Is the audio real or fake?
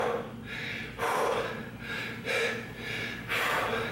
real